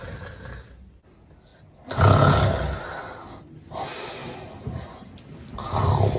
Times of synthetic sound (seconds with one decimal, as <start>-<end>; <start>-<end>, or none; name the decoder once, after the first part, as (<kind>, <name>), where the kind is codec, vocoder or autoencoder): none